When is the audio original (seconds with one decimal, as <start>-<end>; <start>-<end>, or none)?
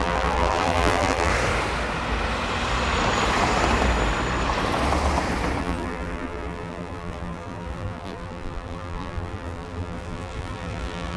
1.3-5.6